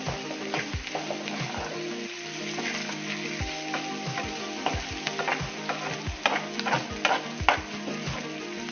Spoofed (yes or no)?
no